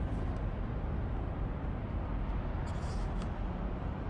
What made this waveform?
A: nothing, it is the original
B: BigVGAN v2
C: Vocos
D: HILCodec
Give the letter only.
A